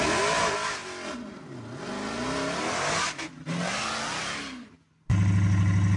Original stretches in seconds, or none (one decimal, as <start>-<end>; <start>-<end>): 0.0-6.0